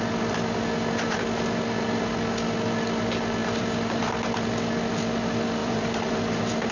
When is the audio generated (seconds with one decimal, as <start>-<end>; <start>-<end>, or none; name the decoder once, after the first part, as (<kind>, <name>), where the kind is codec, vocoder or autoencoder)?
5.6-6.7 (vocoder, BigVGAN v2)